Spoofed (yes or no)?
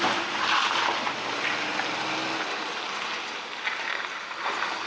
no